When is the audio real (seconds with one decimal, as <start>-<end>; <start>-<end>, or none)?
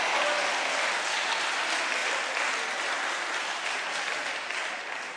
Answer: 0.0-5.2